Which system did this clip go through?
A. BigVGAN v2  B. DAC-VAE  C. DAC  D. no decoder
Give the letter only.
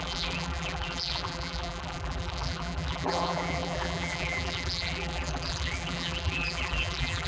A